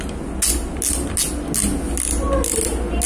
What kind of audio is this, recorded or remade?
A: recorded